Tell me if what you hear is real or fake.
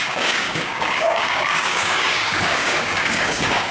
fake